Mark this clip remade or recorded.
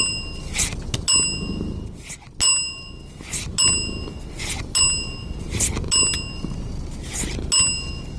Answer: recorded